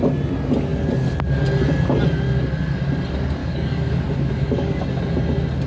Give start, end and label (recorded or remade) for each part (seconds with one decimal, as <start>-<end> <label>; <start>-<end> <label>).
0.0-3.4 recorded; 3.4-4.8 remade; 4.8-5.7 recorded